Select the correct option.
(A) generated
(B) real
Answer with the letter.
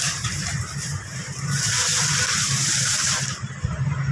A